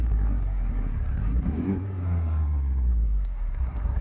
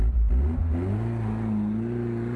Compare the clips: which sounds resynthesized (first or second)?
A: first